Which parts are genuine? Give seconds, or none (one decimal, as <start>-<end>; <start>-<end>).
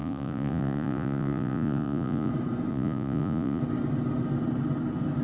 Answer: 2.3-2.7; 3.6-5.2